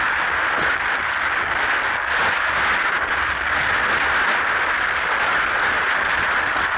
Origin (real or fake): real